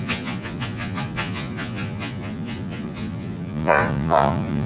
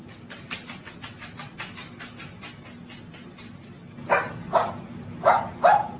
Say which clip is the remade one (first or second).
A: first